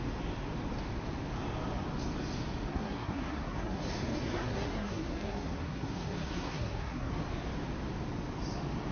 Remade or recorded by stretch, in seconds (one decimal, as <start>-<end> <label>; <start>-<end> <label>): 0.0-2.7 recorded; 2.7-3.8 remade; 3.8-4.3 recorded; 4.3-7.1 remade; 7.1-8.9 recorded